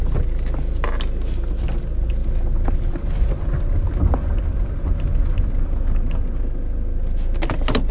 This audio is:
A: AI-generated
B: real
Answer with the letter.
B